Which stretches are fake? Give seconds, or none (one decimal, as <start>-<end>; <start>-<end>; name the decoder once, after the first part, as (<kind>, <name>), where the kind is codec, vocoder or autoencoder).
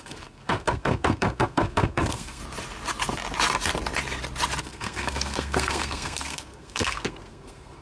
0.0-2.4 (codec, SNAC); 4.6-7.8